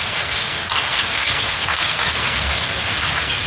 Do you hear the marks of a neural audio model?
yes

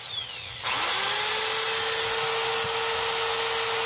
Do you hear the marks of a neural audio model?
no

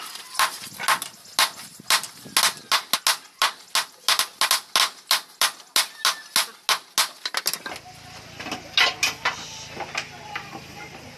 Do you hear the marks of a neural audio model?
no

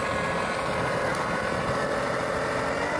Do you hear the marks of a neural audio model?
no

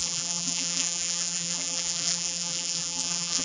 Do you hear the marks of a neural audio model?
yes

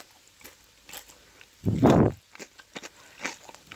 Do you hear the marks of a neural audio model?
no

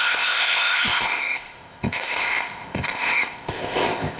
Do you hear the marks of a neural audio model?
yes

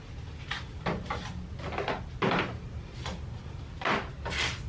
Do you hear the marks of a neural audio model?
no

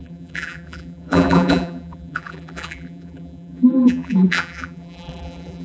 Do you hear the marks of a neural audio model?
yes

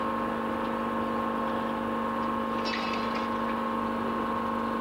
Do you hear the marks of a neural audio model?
no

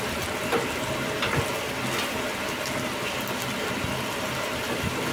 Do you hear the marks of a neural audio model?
no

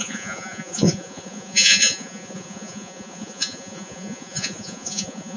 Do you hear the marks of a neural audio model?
yes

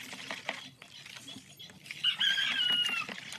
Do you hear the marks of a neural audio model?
no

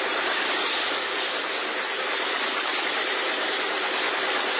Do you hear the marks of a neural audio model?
no